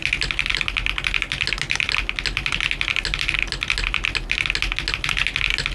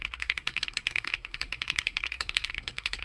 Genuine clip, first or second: first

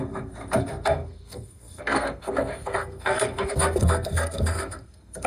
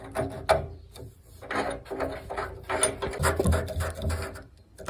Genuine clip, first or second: second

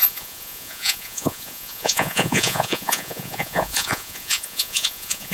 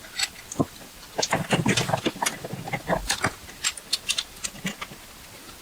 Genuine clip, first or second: second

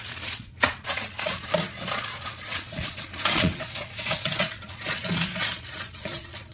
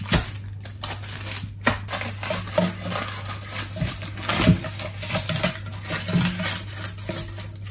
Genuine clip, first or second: second